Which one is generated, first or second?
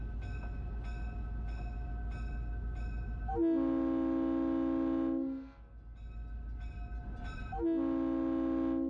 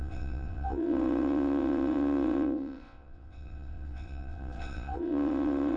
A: second